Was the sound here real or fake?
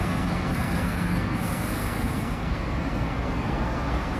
fake